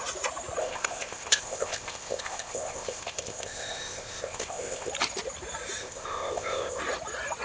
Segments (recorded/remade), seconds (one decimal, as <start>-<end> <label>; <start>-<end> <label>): 0.0-0.6 recorded; 0.6-4.9 remade; 4.9-5.8 recorded; 5.8-6.8 remade; 6.8-7.4 recorded